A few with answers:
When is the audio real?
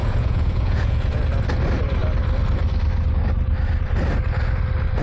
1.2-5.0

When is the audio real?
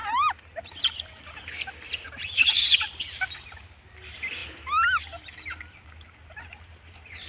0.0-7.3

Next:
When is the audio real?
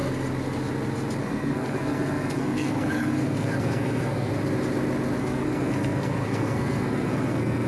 0.0-1.2; 4.3-5.2